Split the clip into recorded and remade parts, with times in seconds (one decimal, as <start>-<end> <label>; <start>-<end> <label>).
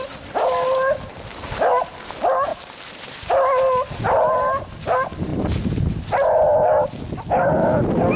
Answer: 0.0-8.2 recorded